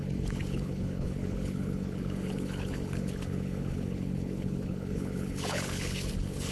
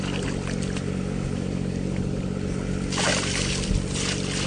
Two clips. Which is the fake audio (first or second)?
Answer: first